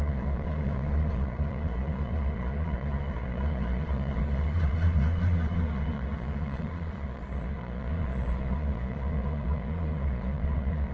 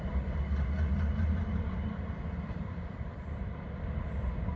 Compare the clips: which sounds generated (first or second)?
first